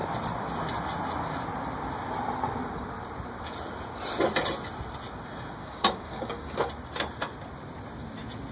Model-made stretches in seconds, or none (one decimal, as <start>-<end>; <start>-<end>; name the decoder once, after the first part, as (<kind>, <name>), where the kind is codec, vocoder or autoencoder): 5.6-6.7 (codec, DAC)